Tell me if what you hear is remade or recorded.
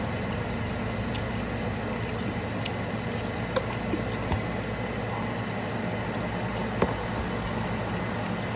recorded